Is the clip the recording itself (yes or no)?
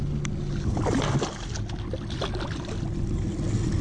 yes